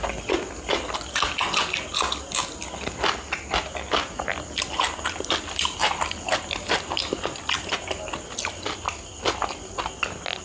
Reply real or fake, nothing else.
real